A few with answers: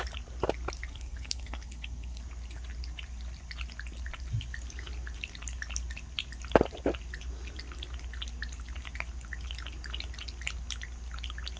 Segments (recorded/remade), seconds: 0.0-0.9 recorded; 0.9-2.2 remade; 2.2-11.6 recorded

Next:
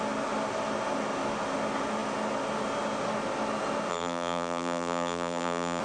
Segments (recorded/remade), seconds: 0.0-3.9 recorded; 3.9-5.8 remade

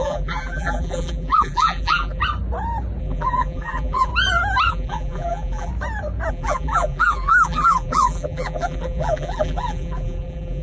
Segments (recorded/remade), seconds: 0.0-2.2 remade; 2.2-3.0 recorded; 3.0-4.1 remade; 4.1-4.7 recorded; 4.7-5.7 remade; 5.7-6.3 recorded; 6.3-10.6 remade

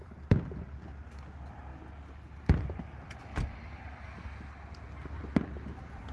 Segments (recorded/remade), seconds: 0.0-6.1 recorded

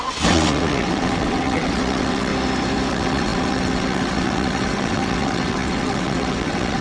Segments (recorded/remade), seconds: 0.0-2.3 remade; 2.3-2.9 recorded; 2.9-6.8 remade

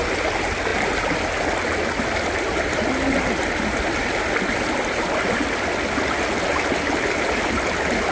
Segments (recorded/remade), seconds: 0.0-8.1 recorded

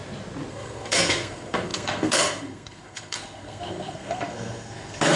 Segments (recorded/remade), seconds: 0.0-0.5 recorded; 0.5-5.2 remade

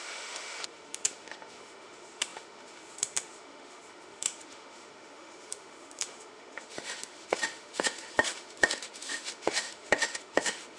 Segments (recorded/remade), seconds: 0.0-10.8 remade